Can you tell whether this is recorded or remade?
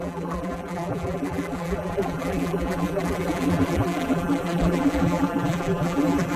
remade